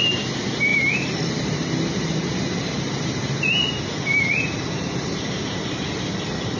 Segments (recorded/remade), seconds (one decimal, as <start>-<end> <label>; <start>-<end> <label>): 0.0-0.7 recorded; 0.7-1.7 remade; 1.7-6.6 recorded